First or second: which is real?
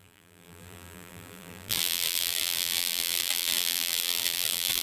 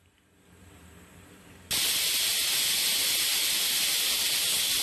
second